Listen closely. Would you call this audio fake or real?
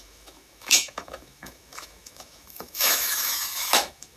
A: fake